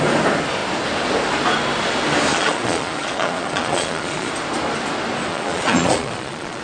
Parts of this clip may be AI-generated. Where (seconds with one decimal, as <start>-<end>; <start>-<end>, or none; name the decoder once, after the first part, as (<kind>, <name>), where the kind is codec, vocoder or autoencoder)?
2.3-4.3 (vocoder, Vocos); 5.3-6.6